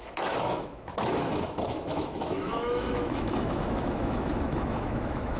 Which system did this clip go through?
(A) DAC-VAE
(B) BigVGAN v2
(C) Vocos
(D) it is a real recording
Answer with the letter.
A